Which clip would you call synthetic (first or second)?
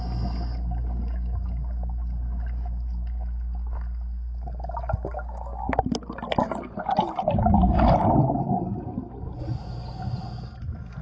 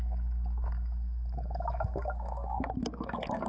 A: second